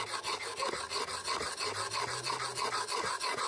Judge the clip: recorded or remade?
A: recorded